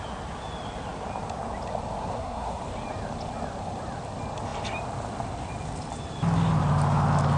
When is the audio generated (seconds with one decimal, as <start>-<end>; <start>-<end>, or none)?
2.0-2.6